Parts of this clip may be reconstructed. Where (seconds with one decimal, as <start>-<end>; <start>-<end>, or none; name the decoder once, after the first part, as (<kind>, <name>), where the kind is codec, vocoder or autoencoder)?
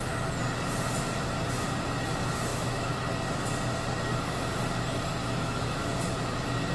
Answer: 2.5-3.1 (autoencoder, DAC-VAE); 5.2-6.0